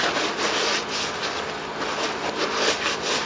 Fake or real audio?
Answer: real